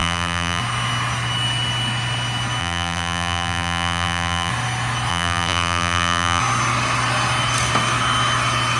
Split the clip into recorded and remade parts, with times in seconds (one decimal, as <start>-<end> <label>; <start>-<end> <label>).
0.0-0.6 remade; 0.6-2.6 recorded; 2.6-4.5 remade; 4.5-5.1 recorded; 5.1-6.4 remade; 6.4-8.8 recorded